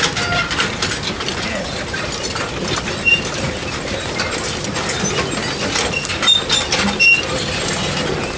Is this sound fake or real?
real